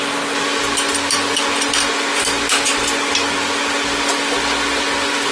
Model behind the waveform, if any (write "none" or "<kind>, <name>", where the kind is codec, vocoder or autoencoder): none